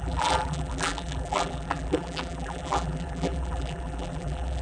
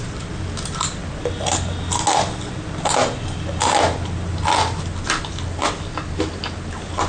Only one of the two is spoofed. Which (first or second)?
first